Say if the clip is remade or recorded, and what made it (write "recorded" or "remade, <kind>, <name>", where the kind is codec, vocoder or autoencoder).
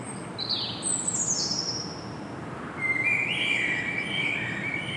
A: recorded